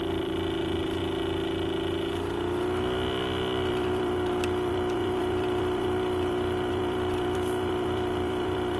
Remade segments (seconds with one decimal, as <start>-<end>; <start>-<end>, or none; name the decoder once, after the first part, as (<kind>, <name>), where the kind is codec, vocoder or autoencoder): 0.0-1.0 (vocoder, BigVGAN v2); 3.7-8.8